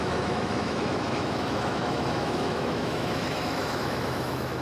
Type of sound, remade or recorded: remade